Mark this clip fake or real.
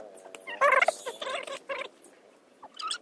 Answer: real